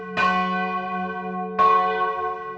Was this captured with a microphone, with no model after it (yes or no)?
yes